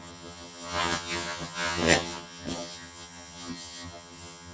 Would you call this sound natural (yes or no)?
no